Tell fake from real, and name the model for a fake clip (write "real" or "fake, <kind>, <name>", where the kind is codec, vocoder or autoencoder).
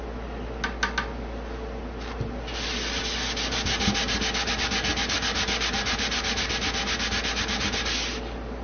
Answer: real